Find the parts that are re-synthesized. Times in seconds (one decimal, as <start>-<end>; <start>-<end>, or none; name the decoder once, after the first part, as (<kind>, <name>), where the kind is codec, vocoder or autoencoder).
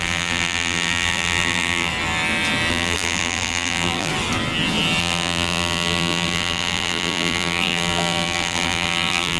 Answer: 0.0-1.9 (vocoder, BigVGAN v2); 2.7-4.1; 5.0-9.4